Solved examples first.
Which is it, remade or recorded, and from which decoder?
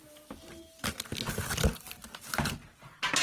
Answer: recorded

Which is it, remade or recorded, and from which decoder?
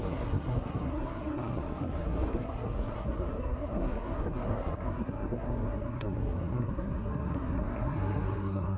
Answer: remade, codec, SNAC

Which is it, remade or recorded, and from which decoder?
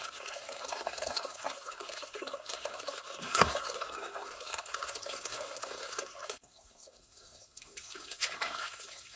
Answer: remade, codec, SNAC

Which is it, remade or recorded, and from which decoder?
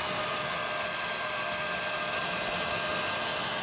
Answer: recorded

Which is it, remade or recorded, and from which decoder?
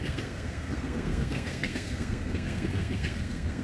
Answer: remade, codec, SNAC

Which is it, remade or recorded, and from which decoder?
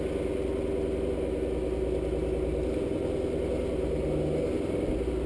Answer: recorded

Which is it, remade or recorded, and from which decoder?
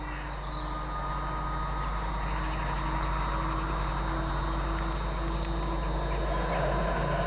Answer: recorded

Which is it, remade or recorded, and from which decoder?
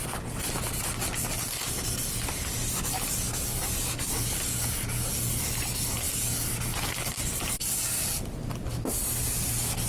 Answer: recorded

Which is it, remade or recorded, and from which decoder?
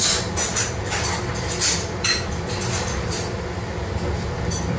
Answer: recorded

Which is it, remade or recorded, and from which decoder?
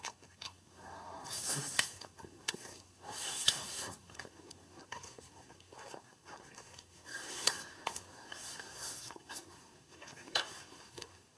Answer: remade, codec, SNAC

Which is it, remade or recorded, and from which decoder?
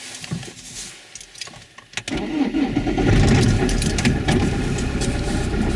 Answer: recorded